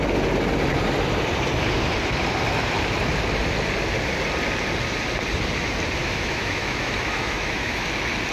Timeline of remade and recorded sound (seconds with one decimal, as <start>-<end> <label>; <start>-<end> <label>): 0.0-6.0 recorded; 6.0-7.9 remade; 7.9-8.3 recorded